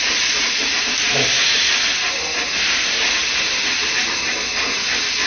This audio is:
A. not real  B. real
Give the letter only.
B